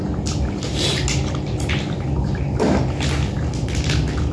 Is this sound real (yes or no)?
yes